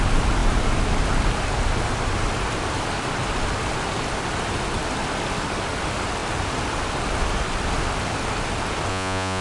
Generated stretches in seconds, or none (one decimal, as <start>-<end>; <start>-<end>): 8.9-9.4

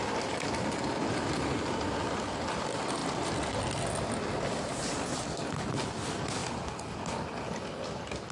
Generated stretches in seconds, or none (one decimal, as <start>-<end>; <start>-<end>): 3.0-3.6

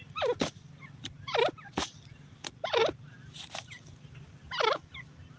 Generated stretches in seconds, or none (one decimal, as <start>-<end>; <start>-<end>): none

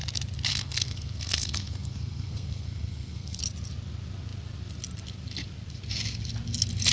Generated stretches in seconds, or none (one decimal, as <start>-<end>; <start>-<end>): 0.5-3.4